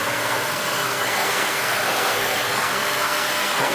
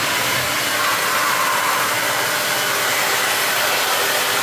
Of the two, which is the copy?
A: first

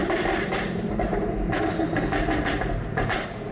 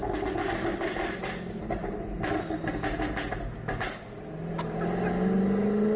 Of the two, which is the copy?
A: first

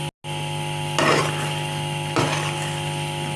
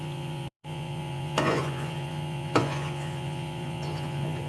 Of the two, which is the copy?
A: second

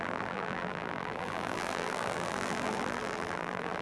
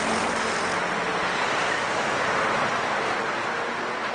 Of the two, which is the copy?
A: first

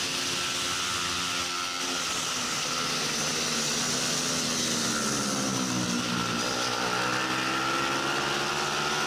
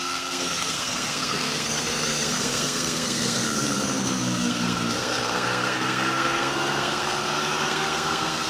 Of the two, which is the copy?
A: second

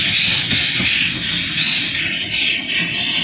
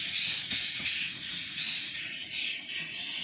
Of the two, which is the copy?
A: second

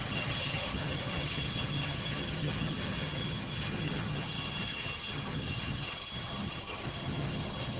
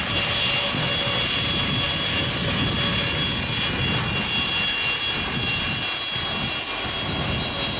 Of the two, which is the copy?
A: first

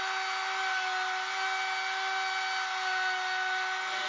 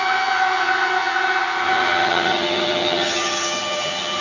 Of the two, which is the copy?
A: second